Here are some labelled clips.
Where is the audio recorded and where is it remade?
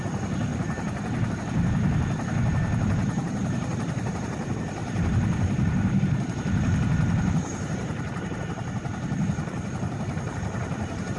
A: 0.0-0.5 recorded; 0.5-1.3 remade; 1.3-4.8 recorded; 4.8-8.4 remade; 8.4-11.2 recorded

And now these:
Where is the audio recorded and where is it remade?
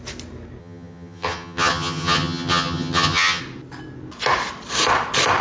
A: 0.0-0.6 recorded; 0.6-3.4 remade; 3.4-5.4 recorded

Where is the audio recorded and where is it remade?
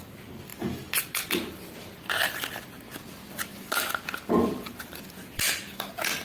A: 0.0-0.5 recorded; 0.5-2.1 remade; 2.1-6.2 recorded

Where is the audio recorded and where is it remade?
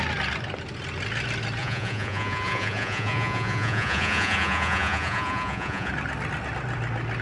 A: 0.0-1.6 recorded; 1.6-5.9 remade; 5.9-7.2 recorded